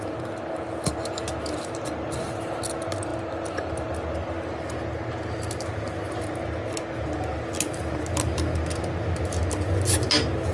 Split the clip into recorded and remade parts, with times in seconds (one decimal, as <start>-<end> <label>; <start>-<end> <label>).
0.0-10.5 recorded